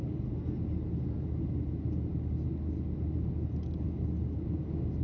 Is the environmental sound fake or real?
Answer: real